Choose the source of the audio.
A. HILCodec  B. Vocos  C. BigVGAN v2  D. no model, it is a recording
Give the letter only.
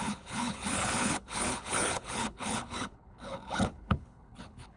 A